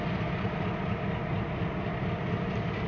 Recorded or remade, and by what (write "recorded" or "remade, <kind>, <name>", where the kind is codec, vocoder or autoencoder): recorded